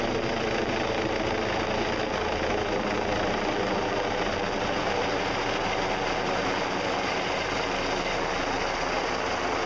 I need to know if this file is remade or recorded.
recorded